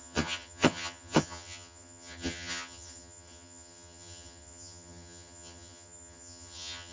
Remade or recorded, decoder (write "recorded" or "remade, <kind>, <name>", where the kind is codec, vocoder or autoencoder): remade, vocoder, HiFi-GAN